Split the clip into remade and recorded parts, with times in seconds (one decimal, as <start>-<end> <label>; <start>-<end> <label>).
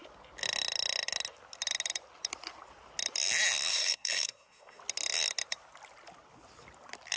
0.0-3.7 recorded; 3.7-4.8 remade; 4.8-7.2 recorded